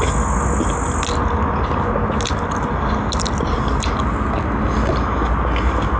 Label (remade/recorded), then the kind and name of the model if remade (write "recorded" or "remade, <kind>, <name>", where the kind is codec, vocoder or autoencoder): recorded